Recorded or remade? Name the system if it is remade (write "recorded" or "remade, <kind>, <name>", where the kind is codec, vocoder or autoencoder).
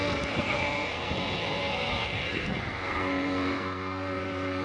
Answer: remade, codec, SNAC